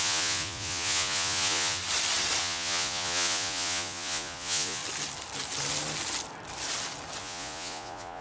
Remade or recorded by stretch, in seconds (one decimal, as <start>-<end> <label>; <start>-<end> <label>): 0.0-1.8 remade; 1.8-2.4 recorded; 2.4-4.8 remade; 4.8-7.2 recorded; 7.2-8.2 remade